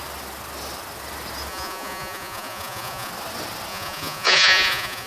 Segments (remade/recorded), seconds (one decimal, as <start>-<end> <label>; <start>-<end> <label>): 0.0-1.5 recorded; 1.5-3.1 remade; 3.1-3.7 recorded; 3.7-5.1 remade